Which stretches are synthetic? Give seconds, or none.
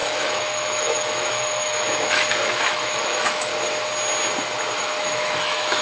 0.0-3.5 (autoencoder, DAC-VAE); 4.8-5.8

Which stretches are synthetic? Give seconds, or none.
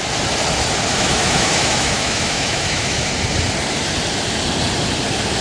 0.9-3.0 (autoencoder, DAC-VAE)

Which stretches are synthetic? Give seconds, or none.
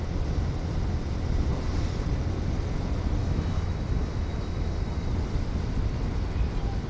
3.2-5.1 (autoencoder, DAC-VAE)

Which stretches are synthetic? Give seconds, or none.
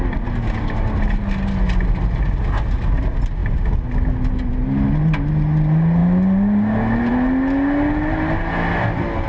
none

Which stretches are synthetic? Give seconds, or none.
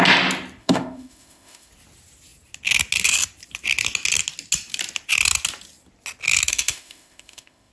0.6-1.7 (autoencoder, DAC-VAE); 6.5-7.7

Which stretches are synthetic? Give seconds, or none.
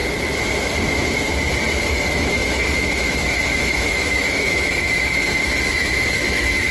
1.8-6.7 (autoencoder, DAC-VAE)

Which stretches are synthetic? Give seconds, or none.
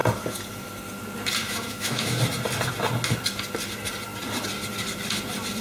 1.4-2.2 (autoencoder, DAC-VAE)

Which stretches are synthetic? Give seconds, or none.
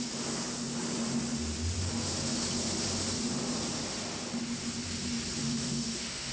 5.4-6.3 (autoencoder, DAC-VAE)